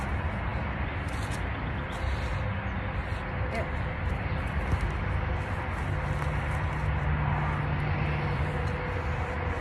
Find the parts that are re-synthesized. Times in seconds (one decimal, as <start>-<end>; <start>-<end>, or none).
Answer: none